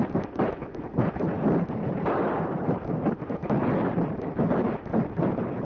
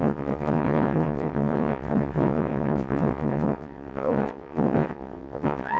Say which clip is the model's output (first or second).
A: second